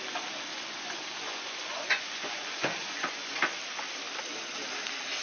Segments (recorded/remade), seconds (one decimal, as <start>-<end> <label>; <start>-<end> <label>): 0.0-0.5 recorded; 0.5-3.6 remade; 3.6-5.2 recorded